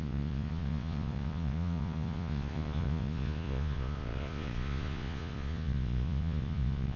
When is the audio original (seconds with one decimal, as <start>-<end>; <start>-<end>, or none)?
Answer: none